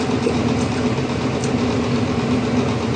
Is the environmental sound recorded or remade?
recorded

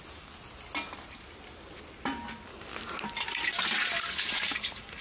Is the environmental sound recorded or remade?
recorded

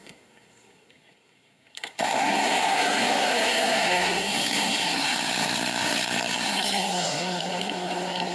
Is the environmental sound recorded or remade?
remade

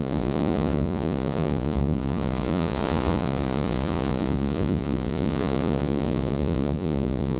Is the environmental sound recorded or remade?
remade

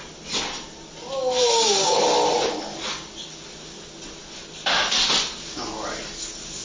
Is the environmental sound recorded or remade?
recorded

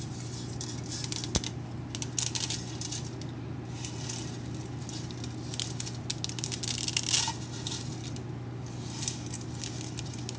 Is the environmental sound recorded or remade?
recorded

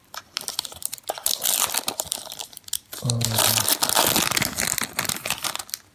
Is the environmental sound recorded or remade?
recorded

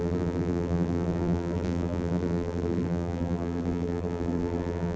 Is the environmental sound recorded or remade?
remade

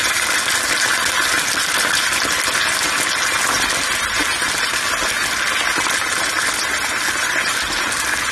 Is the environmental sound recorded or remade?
recorded